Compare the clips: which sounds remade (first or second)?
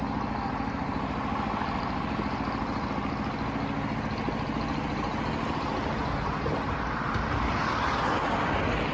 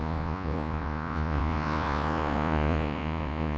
second